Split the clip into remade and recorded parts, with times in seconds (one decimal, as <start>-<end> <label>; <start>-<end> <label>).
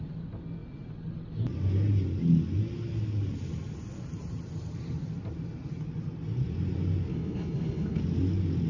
0.0-7.1 recorded; 7.1-8.0 remade; 8.0-8.7 recorded